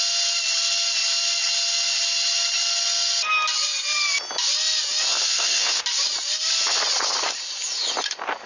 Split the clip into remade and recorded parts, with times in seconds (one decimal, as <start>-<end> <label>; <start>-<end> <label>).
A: 0.0-5.1 recorded; 5.1-5.8 remade; 5.8-8.5 recorded